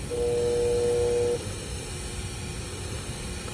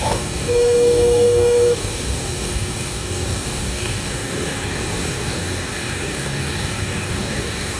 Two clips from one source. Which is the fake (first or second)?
second